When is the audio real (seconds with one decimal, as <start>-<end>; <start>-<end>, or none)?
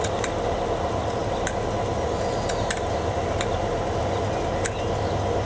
0.0-5.4